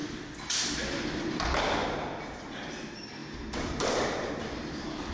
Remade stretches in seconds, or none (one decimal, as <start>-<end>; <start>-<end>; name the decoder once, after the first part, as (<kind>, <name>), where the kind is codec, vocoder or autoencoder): 3.2-4.3 (vocoder, BigVGAN v2)